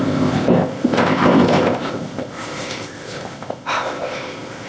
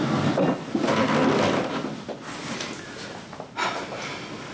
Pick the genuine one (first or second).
second